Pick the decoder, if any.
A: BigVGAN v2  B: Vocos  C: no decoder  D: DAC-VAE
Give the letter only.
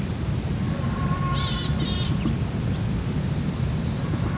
A